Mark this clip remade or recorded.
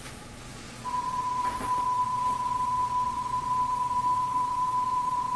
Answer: remade